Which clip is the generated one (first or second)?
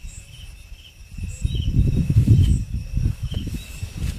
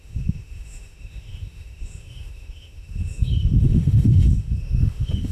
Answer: second